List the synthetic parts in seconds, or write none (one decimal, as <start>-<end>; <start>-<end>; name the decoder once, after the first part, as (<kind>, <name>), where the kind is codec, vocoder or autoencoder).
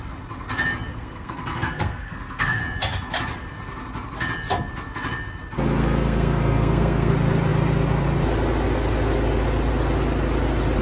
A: 0.9-2.6 (codec, SNAC); 5.8-7.1